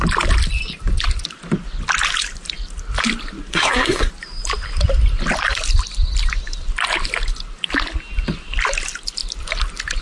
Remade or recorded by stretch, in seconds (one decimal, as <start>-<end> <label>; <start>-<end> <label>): 0.0-3.5 recorded; 3.5-4.1 remade; 4.1-10.0 recorded